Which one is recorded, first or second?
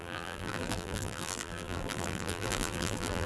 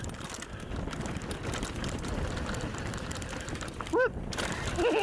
second